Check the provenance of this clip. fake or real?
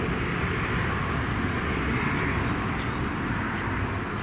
real